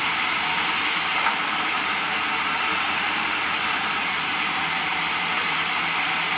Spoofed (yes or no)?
yes